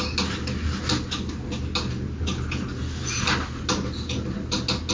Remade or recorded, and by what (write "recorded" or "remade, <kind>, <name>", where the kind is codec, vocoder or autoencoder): recorded